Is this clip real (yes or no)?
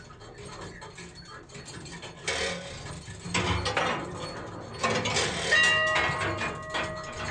yes